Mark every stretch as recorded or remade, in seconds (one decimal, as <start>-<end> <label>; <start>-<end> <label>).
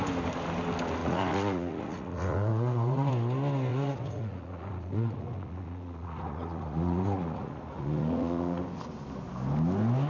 0.0-1.0 recorded; 1.0-3.1 remade; 3.1-3.7 recorded; 3.7-8.6 remade; 8.6-10.1 recorded